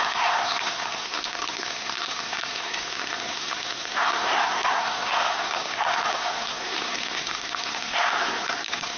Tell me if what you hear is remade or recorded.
remade